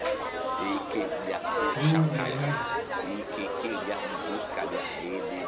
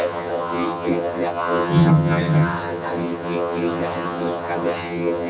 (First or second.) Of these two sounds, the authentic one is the first